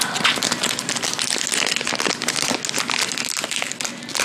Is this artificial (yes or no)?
no